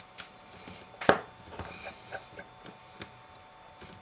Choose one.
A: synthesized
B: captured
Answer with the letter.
B